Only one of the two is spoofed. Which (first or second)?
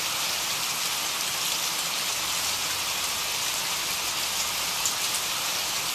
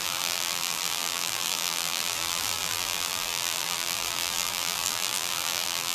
second